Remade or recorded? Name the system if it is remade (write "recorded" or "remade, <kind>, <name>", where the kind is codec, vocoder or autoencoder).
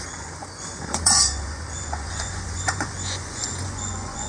remade, vocoder, Vocos